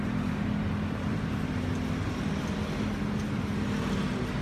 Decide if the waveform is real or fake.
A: real